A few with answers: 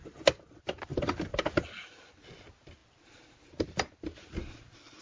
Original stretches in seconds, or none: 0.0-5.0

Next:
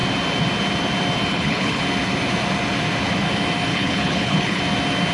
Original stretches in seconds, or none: 0.0-1.3; 1.8-3.7; 4.6-5.1

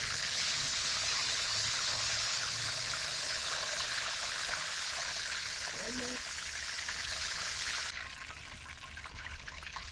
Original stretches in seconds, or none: 8.0-9.0

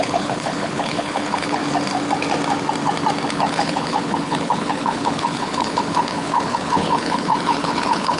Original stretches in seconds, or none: 1.6-3.3

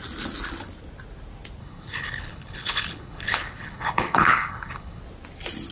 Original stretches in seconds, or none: 0.0-1.6; 5.0-5.7